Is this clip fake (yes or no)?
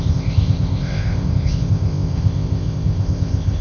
yes